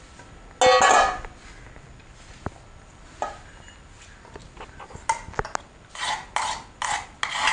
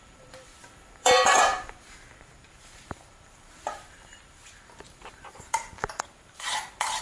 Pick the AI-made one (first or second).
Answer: second